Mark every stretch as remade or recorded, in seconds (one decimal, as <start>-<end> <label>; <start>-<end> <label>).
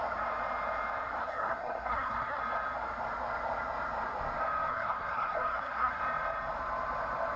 0.0-1.2 recorded; 1.2-2.4 remade; 2.4-4.7 recorded; 4.7-6.0 remade; 6.0-7.4 recorded